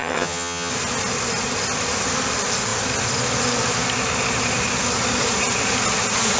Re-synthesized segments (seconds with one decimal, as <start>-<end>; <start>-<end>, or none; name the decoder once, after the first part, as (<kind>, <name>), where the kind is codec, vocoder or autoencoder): 0.0-0.7 (vocoder, HiFi-GAN)